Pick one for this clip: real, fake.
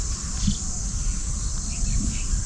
real